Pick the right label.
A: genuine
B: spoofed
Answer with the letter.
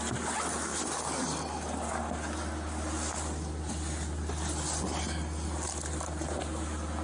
A